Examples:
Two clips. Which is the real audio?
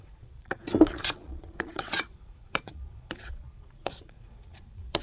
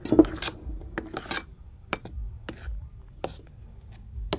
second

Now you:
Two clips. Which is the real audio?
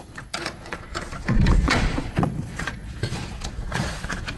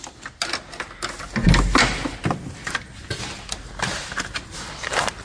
second